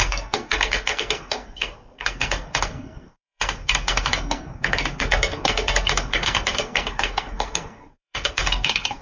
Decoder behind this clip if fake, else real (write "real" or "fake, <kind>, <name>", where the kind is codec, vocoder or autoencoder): fake, codec, SNAC